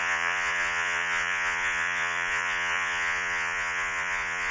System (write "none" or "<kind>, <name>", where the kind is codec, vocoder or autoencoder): vocoder, Vocos